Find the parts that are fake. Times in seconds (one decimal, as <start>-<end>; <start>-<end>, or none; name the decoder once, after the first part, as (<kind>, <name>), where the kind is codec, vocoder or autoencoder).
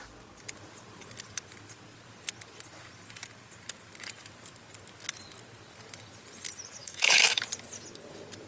6.8-7.4 (autoencoder, DAC-VAE)